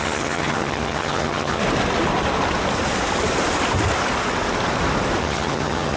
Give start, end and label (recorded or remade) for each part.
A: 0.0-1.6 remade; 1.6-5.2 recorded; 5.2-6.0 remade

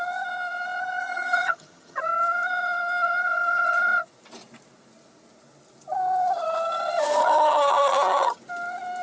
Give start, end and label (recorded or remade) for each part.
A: 0.0-1.0 recorded; 1.0-2.0 remade; 2.0-7.2 recorded; 7.2-8.4 remade; 8.4-9.0 recorded

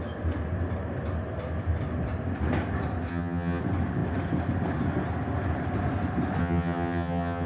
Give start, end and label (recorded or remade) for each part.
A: 0.0-3.1 recorded; 3.1-3.6 remade; 3.6-6.4 recorded; 6.4-7.5 remade

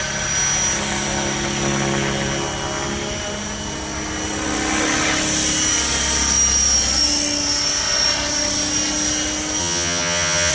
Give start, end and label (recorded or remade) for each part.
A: 0.0-9.6 recorded; 9.6-10.5 remade

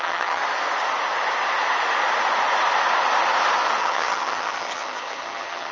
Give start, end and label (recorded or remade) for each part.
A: 0.0-0.4 remade; 0.4-3.8 recorded; 3.8-5.7 remade